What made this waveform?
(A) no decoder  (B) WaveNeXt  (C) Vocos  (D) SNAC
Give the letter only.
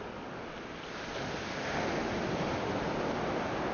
A